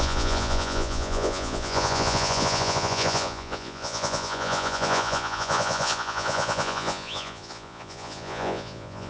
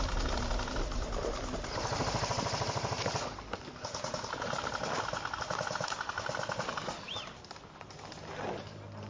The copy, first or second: first